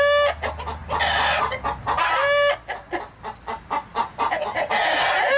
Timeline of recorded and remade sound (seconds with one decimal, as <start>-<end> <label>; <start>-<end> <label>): 0.0-5.4 recorded